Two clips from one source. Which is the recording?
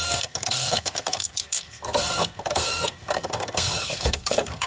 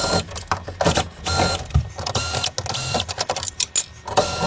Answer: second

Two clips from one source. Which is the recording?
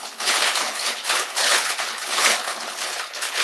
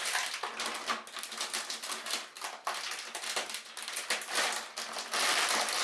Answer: second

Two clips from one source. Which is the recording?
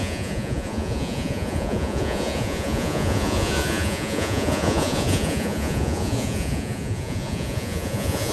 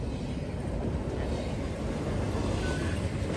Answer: second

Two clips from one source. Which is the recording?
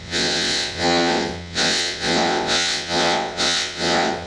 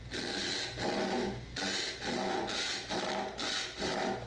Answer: second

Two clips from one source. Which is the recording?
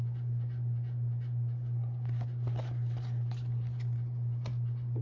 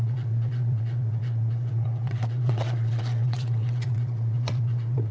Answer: first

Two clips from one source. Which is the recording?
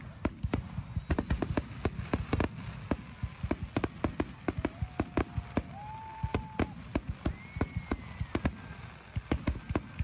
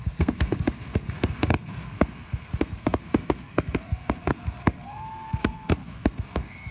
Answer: first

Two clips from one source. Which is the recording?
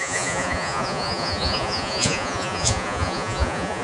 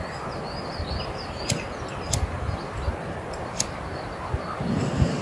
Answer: second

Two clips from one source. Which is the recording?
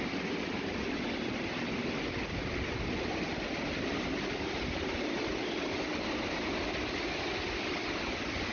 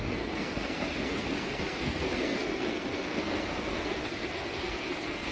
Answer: first